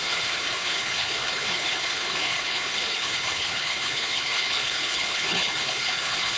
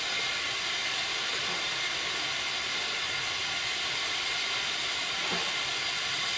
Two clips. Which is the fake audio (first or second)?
first